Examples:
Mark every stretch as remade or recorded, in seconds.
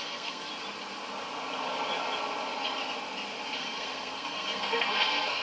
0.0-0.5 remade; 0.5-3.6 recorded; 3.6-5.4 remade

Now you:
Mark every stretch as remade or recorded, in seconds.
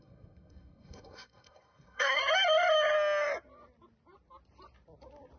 0.0-2.2 remade; 2.2-5.4 recorded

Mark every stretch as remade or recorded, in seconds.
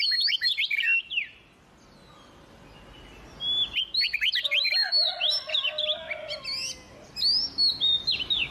0.0-8.5 recorded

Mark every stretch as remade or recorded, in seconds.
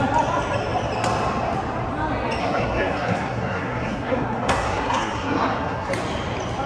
0.0-2.4 recorded; 2.4-5.9 remade; 5.9-6.7 recorded